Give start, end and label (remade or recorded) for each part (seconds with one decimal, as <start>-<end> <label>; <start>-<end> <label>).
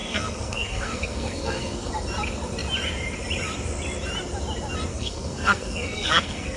0.0-1.9 remade; 1.9-4.9 recorded; 4.9-6.6 remade